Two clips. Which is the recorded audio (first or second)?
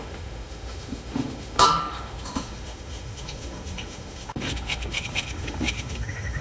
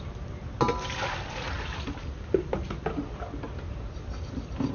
second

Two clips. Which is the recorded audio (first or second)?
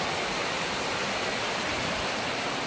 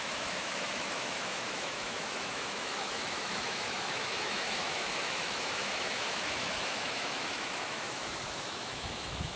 first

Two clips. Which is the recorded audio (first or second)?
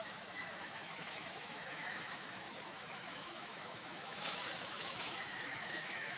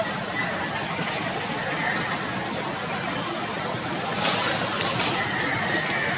second